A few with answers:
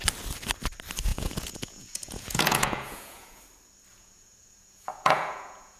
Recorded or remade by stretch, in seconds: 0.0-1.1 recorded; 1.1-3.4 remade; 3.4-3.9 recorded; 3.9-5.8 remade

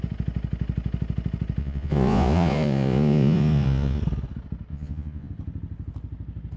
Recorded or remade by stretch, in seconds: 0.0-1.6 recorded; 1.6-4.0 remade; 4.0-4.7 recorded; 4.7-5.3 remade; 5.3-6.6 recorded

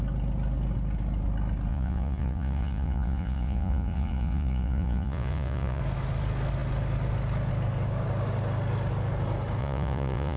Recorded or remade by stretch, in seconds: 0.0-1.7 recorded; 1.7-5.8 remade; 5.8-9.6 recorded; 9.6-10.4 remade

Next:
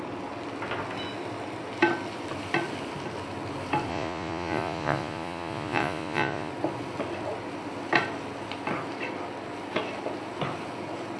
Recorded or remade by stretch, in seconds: 0.0-3.9 recorded; 3.9-6.5 remade; 6.5-11.2 recorded

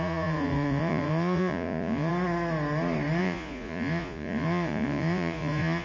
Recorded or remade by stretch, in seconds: 0.0-2.1 remade; 2.1-3.2 recorded; 3.2-5.8 remade

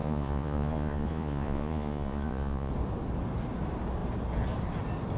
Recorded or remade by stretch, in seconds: 0.0-2.7 remade; 2.7-5.2 recorded